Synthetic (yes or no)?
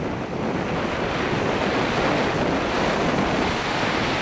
no